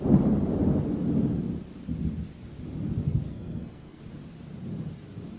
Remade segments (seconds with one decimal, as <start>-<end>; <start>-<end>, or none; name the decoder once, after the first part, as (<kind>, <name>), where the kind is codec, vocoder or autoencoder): 3.1-4.0 (codec, SNAC)